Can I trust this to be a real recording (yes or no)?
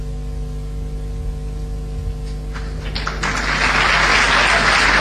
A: yes